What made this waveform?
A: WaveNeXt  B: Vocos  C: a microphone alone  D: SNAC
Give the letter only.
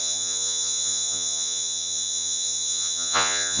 B